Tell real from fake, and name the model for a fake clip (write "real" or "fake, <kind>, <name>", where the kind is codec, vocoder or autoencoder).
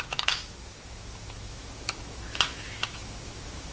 fake, autoencoder, DAC-VAE